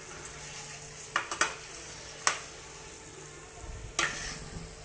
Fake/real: real